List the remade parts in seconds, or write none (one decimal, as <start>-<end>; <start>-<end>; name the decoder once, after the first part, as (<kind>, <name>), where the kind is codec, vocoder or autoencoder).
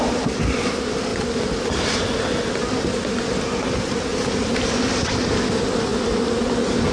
4.1-4.8 (vocoder, BigVGAN v2)